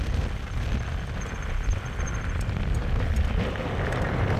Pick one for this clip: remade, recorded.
recorded